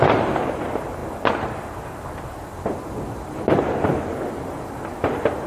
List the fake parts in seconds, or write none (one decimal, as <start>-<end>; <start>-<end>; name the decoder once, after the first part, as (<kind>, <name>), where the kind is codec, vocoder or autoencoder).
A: none